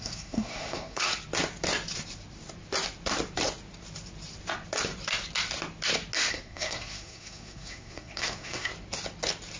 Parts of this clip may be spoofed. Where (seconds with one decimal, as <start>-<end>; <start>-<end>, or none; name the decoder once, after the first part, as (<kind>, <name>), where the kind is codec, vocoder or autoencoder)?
0.0-1.1 (codec, SNAC); 6.3-8.7